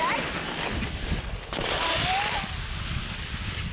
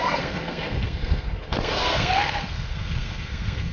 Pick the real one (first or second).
first